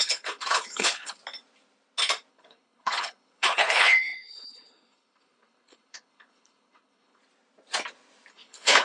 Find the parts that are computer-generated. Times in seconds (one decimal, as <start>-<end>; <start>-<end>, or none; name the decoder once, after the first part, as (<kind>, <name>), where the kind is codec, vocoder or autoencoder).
0.0-1.2 (codec, HILCodec); 2.3-7.2; 8.3-8.8